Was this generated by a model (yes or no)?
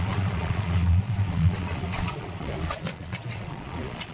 yes